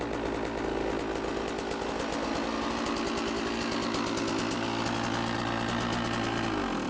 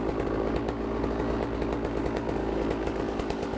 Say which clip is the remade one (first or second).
second